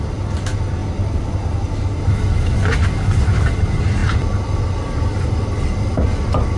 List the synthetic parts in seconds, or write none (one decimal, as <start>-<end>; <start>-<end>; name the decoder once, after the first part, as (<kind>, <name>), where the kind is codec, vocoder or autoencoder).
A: none